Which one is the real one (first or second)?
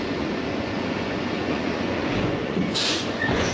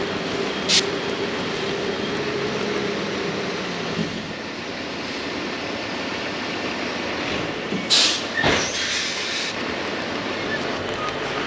second